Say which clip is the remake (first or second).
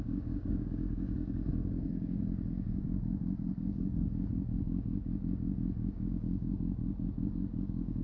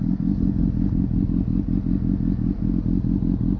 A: first